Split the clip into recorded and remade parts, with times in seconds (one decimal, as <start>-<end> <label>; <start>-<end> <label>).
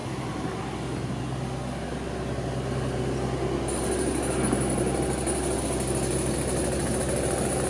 0.0-7.7 recorded